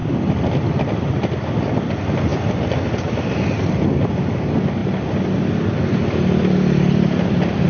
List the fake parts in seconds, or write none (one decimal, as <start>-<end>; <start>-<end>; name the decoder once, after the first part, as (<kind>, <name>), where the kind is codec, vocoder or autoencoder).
none